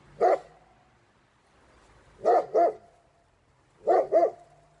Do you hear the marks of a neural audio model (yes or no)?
no